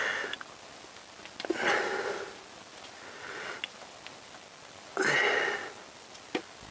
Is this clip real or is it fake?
real